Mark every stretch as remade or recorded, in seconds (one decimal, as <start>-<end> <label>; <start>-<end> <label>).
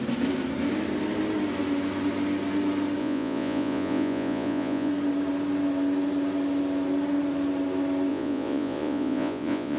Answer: 0.0-3.0 recorded; 3.0-4.9 remade; 4.9-8.1 recorded; 8.1-9.8 remade